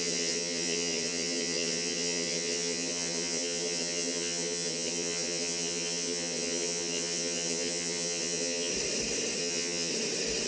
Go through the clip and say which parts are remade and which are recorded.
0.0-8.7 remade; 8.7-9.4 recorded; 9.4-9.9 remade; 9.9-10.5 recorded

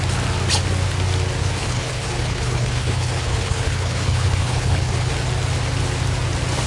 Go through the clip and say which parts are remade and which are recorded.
0.0-1.4 recorded; 1.4-5.1 remade; 5.1-6.7 recorded

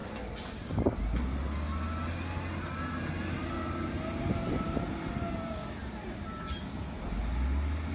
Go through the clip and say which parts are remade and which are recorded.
0.0-7.9 recorded

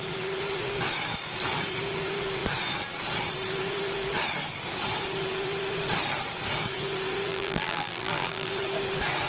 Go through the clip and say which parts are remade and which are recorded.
0.0-7.3 recorded; 7.3-8.5 remade; 8.5-9.3 recorded

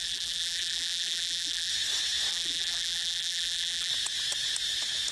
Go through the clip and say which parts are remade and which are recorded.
0.0-1.7 remade; 1.7-2.3 recorded; 2.3-3.9 remade; 3.9-5.1 recorded

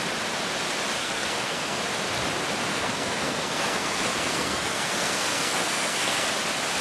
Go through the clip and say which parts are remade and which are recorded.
0.0-1.0 recorded; 1.0-1.8 remade; 1.8-2.7 recorded; 2.7-6.3 remade; 6.3-6.8 recorded